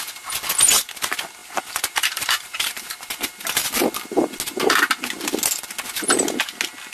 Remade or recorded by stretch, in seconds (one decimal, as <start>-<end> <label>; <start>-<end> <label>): 0.0-1.4 recorded; 1.4-2.9 remade; 2.9-6.9 recorded